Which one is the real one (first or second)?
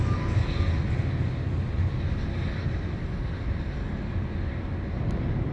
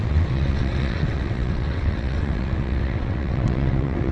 first